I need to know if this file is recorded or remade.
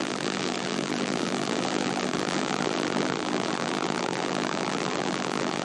remade